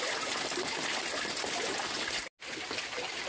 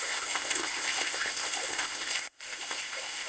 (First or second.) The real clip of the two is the first